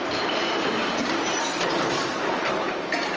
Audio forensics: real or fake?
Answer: fake